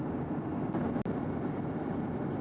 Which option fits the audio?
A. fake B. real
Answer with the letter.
B